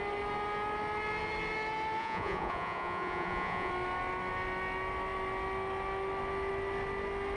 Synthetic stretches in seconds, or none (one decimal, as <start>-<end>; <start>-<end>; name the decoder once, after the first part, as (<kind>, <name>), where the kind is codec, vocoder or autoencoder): 2.0-3.7 (vocoder, Vocos)